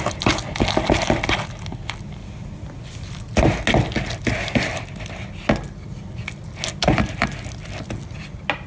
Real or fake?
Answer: real